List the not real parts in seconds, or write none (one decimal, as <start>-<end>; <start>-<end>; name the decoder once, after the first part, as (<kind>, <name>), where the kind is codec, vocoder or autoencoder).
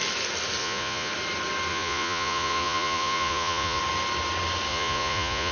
0.6-1.1 (vocoder, Vocos); 1.7-3.8; 4.7-5.5